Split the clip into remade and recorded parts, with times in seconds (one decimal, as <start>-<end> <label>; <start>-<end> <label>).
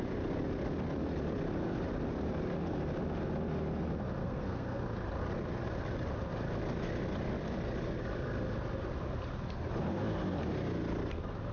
0.0-4.2 recorded; 4.2-4.8 remade; 4.8-11.5 recorded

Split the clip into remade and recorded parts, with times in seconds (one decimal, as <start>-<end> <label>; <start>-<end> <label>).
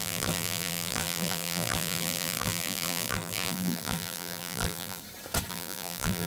0.0-5.0 remade; 5.0-5.5 recorded; 5.5-6.3 remade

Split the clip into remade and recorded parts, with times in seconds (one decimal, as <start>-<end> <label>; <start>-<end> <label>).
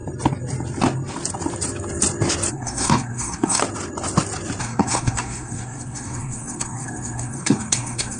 0.0-2.5 recorded; 2.5-3.6 remade; 3.6-4.6 recorded; 4.6-8.2 remade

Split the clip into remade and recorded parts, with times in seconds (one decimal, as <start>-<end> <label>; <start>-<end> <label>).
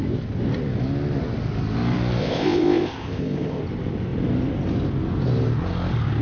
0.0-2.2 recorded; 2.2-3.6 remade; 3.6-6.2 recorded